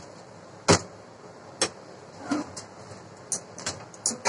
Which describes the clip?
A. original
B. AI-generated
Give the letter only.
A